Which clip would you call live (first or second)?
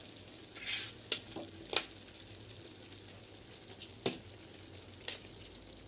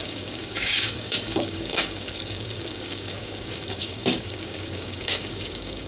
first